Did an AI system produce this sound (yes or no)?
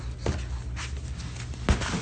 no